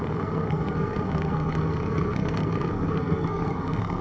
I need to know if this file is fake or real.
fake